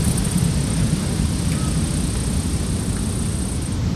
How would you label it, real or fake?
real